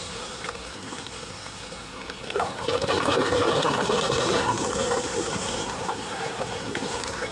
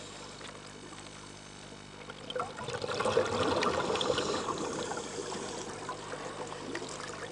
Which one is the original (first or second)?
second